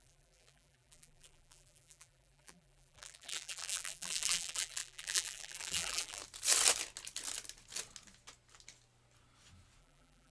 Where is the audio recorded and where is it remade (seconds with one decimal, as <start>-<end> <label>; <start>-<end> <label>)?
0.0-6.2 remade; 6.2-9.8 recorded; 9.8-10.3 remade